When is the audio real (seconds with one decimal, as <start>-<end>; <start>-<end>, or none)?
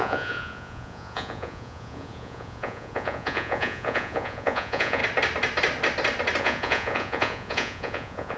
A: 5.0-6.4